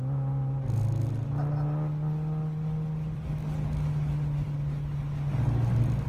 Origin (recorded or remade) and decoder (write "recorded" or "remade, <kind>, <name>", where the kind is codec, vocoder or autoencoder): recorded